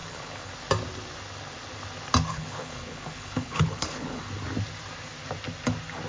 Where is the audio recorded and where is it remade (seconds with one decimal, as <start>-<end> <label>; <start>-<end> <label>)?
0.0-0.5 remade; 0.5-2.3 recorded; 2.3-4.2 remade; 4.2-6.1 recorded